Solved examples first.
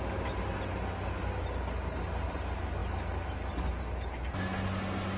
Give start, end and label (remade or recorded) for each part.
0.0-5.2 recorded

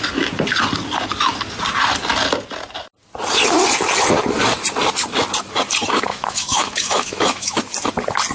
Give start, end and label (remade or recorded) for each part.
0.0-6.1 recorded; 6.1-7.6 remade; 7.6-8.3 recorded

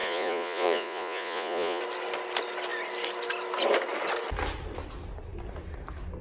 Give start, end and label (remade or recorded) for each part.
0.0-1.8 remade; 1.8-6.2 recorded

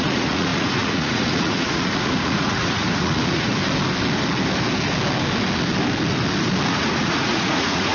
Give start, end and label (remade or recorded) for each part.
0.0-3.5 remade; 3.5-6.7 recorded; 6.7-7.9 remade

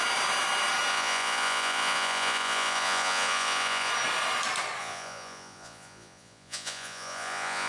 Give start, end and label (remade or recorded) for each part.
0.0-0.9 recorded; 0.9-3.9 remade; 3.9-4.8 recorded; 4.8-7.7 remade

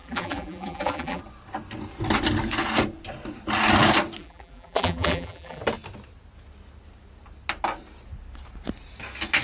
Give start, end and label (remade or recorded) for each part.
0.0-1.2 remade; 1.2-4.2 recorded; 4.2-5.6 remade; 5.6-9.4 recorded

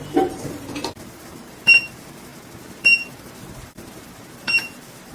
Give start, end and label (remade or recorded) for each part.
0.0-5.1 remade

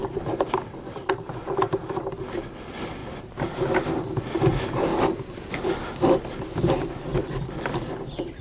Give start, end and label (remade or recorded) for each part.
0.0-8.4 recorded